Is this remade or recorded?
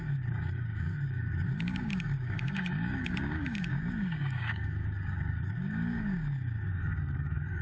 remade